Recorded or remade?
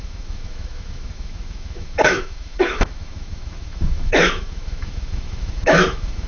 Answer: remade